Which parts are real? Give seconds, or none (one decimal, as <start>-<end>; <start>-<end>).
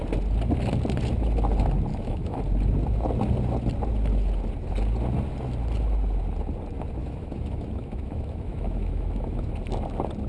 0.0-1.9; 2.4-7.0; 9.5-10.3